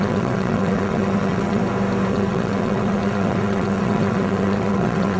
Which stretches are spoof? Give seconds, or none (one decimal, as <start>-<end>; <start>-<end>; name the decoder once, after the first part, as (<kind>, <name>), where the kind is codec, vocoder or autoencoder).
0.0-1.6 (vocoder, WaveNeXt); 2.1-5.2